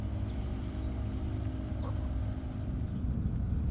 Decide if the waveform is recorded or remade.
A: recorded